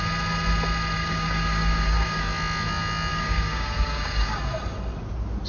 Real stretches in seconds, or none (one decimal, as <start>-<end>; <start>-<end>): 0.0-1.0; 2.2-3.1; 4.4-5.5